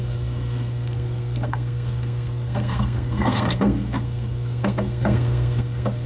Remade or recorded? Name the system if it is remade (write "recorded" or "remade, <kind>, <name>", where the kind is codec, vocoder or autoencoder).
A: remade, codec, SNAC